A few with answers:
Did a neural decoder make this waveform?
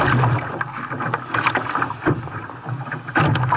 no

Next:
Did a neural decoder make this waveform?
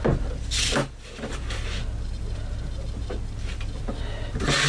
no